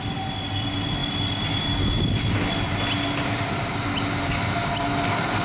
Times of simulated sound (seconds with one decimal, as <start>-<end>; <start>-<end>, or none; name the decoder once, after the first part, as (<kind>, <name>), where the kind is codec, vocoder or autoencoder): none